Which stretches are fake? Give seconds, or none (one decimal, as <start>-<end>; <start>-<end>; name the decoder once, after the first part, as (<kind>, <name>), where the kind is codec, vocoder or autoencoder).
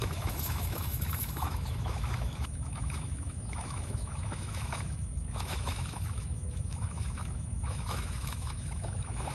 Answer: 0.0-9.3 (autoencoder, DAC-VAE)